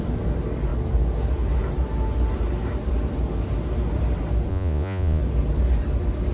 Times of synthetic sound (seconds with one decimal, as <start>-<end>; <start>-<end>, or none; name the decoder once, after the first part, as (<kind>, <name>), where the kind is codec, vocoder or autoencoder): 4.5-5.2 (vocoder, Vocos)